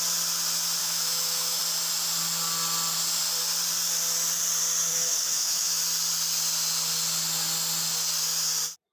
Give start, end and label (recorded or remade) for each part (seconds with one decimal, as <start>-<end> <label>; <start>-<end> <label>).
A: 0.0-0.8 recorded; 0.8-1.6 remade; 1.6-4.9 recorded; 4.9-5.7 remade; 5.7-8.9 recorded